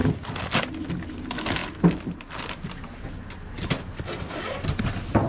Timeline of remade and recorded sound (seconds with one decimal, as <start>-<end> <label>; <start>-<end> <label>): 0.0-5.3 recorded